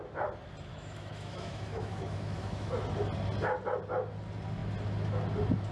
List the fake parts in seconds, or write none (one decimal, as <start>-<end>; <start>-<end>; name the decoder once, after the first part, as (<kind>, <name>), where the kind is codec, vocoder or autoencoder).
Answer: 0.7-2.7 (autoencoder, DAC-VAE)